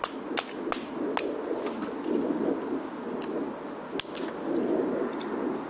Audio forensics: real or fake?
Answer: real